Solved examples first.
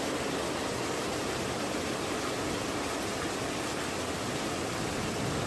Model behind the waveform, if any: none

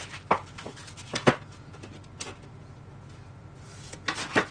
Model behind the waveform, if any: none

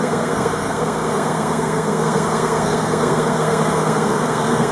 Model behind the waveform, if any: codec, SNAC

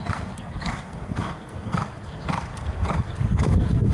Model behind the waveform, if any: codec, SNAC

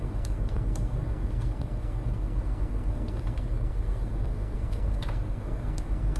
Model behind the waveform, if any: codec, SNAC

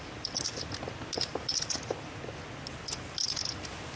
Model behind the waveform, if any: none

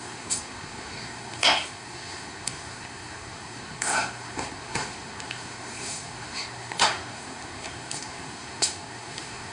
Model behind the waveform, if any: codec, SNAC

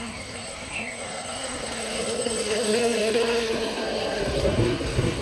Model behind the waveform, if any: codec, SNAC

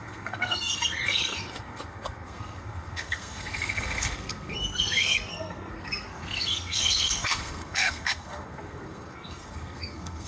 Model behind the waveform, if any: codec, SNAC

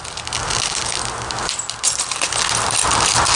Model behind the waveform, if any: none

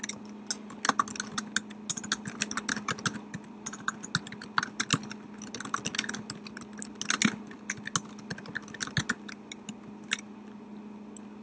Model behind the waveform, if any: none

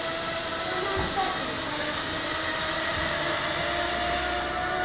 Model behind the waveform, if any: none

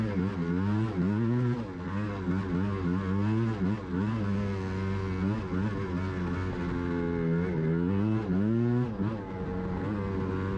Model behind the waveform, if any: none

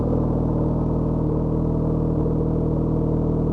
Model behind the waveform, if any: none